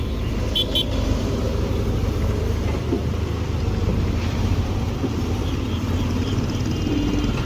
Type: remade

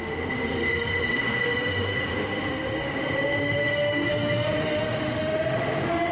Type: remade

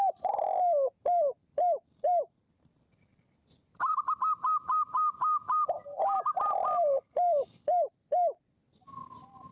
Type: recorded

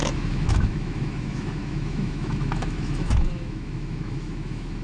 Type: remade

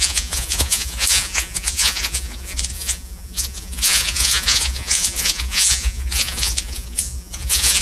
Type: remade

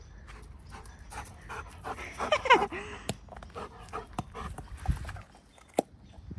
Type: recorded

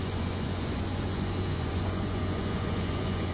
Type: remade